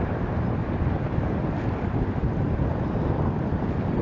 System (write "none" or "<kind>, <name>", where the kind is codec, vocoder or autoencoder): none